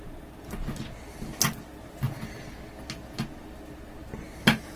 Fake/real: real